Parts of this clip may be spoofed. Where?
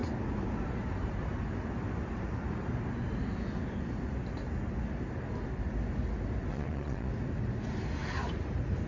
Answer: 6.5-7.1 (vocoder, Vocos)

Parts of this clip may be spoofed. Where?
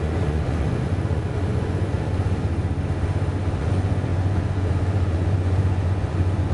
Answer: 0.0-2.5 (vocoder, Vocos); 3.6-6.5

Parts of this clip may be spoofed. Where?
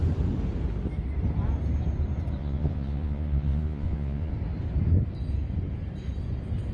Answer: 2.4-4.3 (vocoder, Vocos)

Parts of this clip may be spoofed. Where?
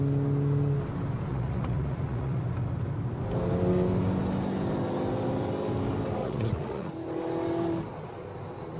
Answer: 1.3-2.4 (vocoder, Vocos); 6.2-6.9